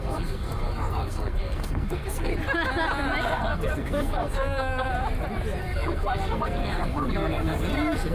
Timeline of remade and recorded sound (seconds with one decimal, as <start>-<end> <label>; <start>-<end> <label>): 0.0-2.3 remade; 2.3-3.2 recorded; 3.2-4.9 remade; 4.9-5.6 recorded; 5.6-8.1 remade